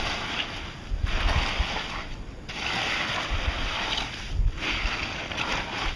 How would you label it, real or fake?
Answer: real